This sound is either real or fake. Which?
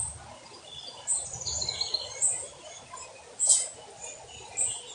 real